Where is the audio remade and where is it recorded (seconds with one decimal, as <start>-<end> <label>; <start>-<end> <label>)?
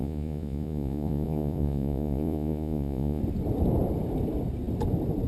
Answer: 0.0-3.2 remade; 3.2-5.3 recorded